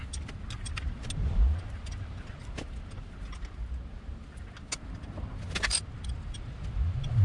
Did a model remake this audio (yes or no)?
no